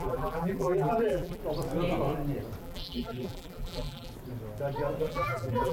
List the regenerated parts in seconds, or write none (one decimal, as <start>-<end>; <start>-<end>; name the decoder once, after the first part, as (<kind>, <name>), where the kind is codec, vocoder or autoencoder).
0.0-1.4 (vocoder, BigVGAN v2); 2.6-4.1; 5.0-5.7